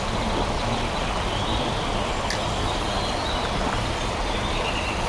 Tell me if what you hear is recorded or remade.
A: recorded